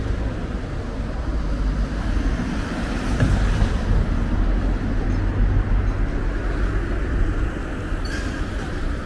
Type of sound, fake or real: real